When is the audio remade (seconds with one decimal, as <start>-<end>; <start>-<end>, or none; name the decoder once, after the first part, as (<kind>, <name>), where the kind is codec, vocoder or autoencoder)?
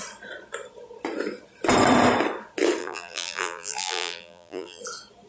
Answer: 2.8-4.8 (vocoder, BigVGAN v2)